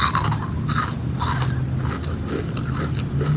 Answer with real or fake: real